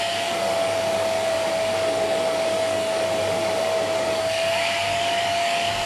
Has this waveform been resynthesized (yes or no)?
yes